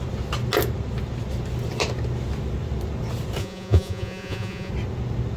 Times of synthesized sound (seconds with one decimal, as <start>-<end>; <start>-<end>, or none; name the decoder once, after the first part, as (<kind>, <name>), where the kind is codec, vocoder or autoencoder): 3.4-4.7 (vocoder, Vocos)